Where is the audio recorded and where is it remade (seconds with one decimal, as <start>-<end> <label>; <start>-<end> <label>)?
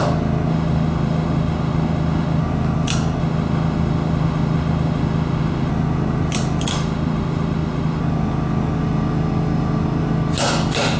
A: 0.0-0.5 recorded; 0.5-2.4 remade; 2.4-3.2 recorded; 3.2-5.7 remade; 5.7-6.7 recorded; 6.7-8.0 remade; 8.0-11.0 recorded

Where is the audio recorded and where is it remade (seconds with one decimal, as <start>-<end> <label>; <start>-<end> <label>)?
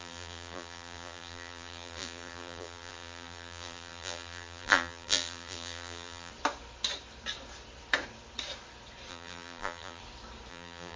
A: 0.0-6.3 remade; 6.3-9.1 recorded; 9.1-10.0 remade; 10.0-10.5 recorded; 10.5-11.0 remade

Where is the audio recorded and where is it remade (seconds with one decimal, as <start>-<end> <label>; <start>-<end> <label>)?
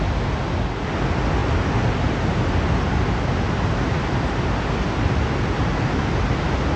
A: 0.0-6.8 recorded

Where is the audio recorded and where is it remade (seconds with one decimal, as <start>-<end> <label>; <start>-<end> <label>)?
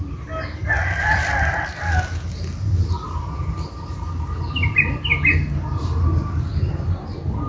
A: 0.0-0.6 recorded; 0.6-1.8 remade; 1.8-7.5 recorded